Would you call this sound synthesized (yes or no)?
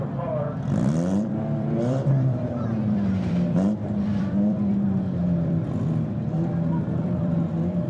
yes